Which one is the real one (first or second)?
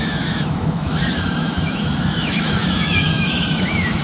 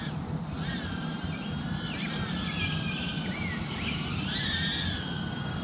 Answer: second